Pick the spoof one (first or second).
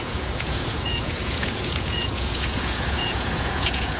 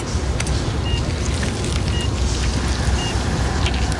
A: first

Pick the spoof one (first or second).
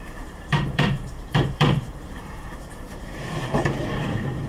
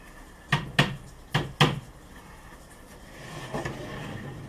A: first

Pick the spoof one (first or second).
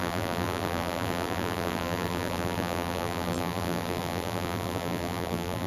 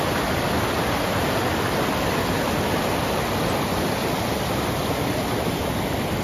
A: first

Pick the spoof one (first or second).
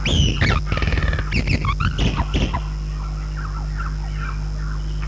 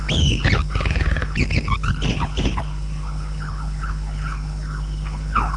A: second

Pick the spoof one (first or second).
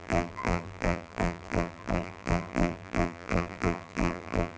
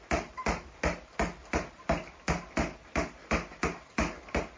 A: first